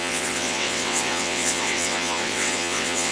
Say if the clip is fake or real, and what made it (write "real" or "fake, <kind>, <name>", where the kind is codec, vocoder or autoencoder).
fake, vocoder, WaveNeXt